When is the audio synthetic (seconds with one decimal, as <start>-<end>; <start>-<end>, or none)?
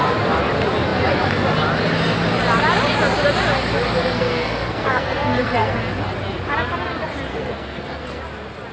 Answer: 4.0-5.8; 7.3-8.2